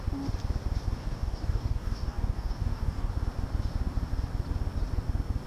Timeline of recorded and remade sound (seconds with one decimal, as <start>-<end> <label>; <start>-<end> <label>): 0.0-1.0 recorded; 1.0-3.1 remade; 3.1-5.5 recorded